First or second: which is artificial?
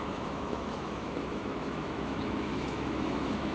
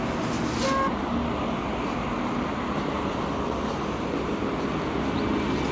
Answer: first